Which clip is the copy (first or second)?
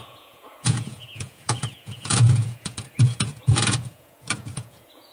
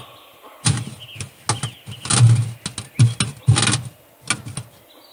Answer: first